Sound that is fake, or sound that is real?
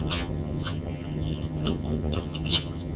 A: fake